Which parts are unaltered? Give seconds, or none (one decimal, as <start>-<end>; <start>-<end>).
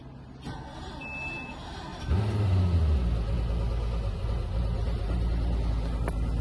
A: 0.0-6.4